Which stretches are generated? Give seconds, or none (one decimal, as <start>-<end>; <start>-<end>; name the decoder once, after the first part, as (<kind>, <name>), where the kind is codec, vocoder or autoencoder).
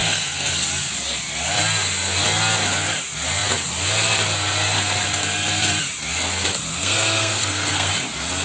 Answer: 0.0-0.5 (codec, SNAC); 6.7-7.9